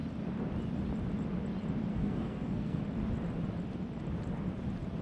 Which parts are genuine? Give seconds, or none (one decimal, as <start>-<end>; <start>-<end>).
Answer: 0.0-1.9; 2.8-5.0